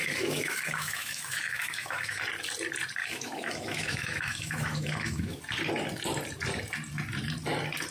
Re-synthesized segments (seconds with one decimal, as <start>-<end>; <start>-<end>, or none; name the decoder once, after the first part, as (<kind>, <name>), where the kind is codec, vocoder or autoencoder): 0.0-2.2 (autoencoder, DAC-VAE); 3.0-5.4